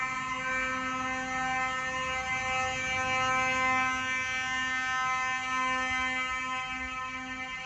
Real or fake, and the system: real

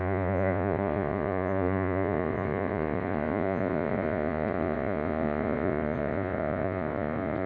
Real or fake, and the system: fake, vocoder, Vocos